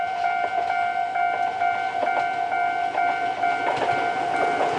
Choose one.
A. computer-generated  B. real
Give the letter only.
B